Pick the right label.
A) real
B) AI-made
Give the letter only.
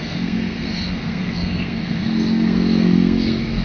B